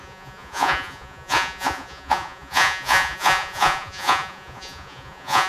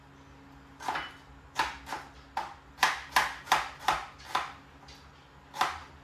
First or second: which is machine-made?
first